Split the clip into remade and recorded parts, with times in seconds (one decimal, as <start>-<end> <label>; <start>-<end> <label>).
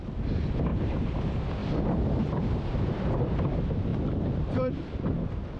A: 0.0-0.7 recorded; 0.7-1.2 remade; 1.2-1.6 recorded; 1.6-3.1 remade; 3.1-3.9 recorded; 3.9-4.7 remade; 4.7-5.6 recorded